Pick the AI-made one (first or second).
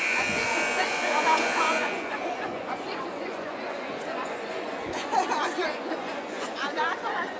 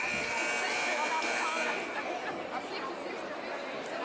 first